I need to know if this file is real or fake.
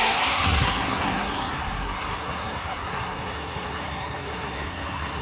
fake